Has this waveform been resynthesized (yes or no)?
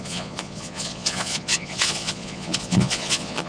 yes